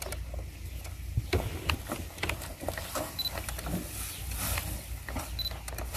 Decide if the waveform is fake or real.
real